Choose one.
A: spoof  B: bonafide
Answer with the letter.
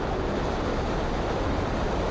B